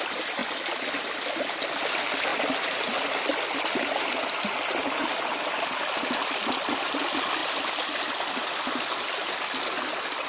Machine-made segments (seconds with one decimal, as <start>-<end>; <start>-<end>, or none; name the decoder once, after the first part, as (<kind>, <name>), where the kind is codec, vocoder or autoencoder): none